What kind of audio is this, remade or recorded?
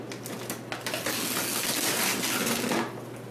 recorded